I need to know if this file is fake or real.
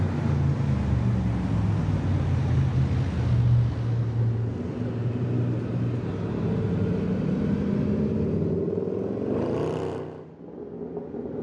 real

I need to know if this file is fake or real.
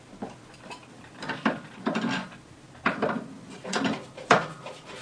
real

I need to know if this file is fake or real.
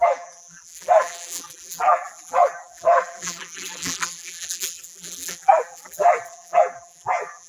fake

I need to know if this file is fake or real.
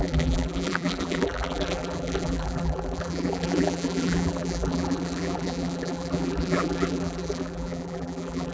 fake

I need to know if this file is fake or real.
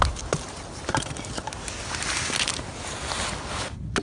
real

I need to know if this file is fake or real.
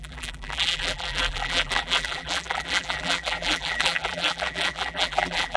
fake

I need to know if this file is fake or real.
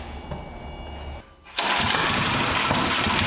real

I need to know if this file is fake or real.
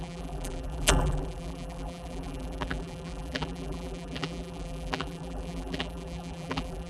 fake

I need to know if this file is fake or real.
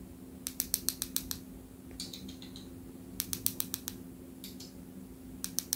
real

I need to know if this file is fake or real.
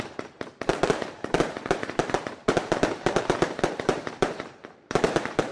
fake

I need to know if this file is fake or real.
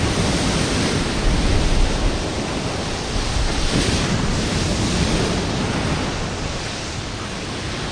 real